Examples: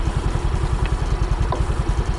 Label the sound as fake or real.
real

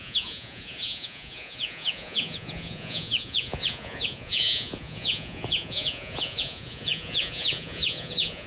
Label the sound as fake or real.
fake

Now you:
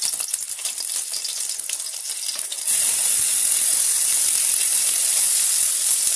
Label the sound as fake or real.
real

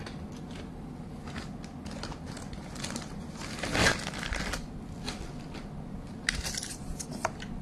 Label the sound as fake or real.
real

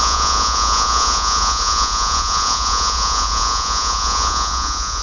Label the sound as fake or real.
fake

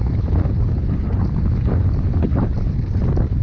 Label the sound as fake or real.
real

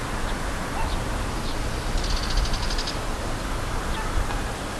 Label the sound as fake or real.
real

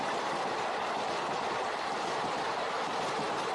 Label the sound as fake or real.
real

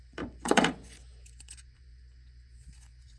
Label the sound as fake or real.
fake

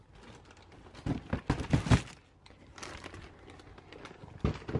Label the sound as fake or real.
real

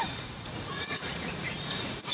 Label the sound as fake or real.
fake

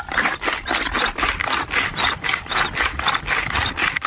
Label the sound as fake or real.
real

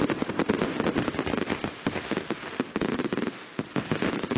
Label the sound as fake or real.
real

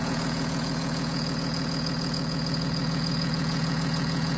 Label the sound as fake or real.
fake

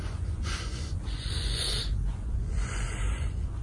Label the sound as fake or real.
fake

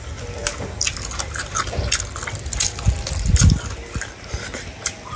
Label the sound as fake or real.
real